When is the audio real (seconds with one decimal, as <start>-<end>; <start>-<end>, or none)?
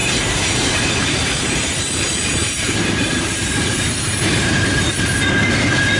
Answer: 1.7-2.2; 4.6-6.0